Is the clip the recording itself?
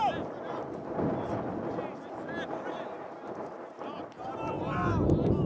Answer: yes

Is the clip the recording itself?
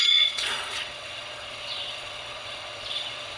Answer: no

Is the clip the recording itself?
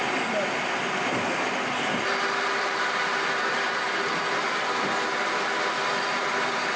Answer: yes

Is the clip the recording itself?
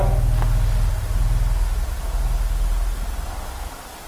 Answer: yes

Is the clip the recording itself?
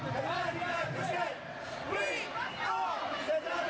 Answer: yes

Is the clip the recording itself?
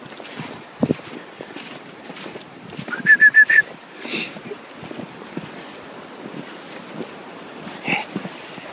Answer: yes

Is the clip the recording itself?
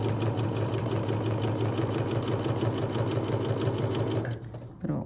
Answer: yes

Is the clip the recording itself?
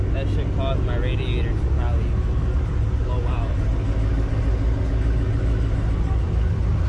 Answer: yes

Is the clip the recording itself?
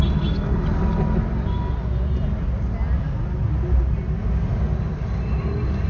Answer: yes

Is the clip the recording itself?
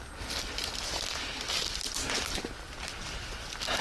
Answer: yes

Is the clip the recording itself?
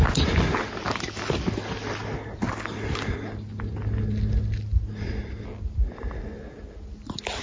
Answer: yes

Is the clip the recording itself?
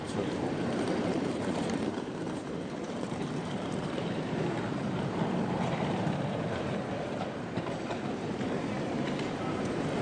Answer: no